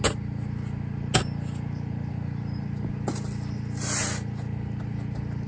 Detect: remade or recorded recorded